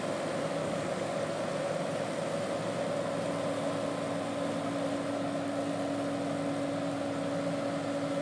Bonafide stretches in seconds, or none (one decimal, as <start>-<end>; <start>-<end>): 0.0-0.6; 1.5-8.2